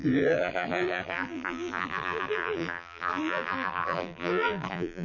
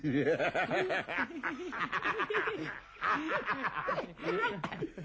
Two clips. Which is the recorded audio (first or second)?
second